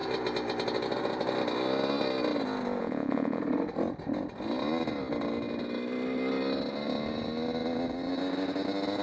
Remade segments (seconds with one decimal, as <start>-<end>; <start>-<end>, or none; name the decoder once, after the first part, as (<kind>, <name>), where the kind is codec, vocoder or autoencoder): 2.8-3.4 (vocoder, Vocos)